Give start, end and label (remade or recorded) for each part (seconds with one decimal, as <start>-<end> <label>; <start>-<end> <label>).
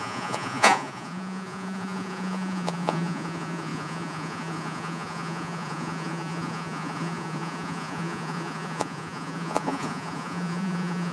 0.0-11.1 remade